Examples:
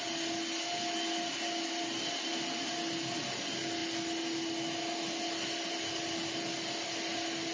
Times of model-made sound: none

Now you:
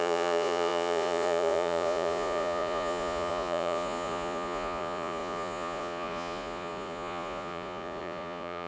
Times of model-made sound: 0.0-8.7 (vocoder, Vocos)

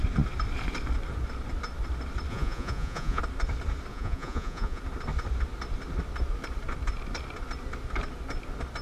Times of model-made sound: 2.3-3.2 (vocoder, Vocos); 3.9-4.8

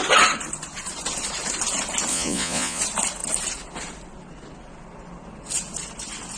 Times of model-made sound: 2.1-2.8 (vocoder, Vocos)

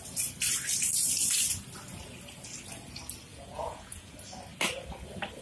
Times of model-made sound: 3.3-4.1 (vocoder, Vocos)

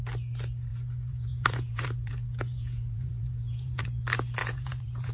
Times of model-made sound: 0.7-3.8 (vocoder, Vocos); 4.4-5.1

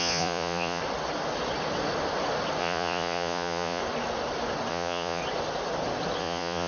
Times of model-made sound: 0.0-0.8 (vocoder, Vocos); 2.6-3.8; 4.7-5.2; 6.2-6.7